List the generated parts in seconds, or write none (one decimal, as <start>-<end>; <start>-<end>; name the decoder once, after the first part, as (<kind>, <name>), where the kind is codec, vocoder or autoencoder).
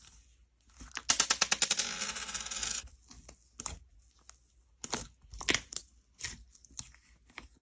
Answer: none